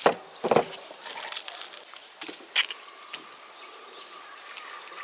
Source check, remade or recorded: recorded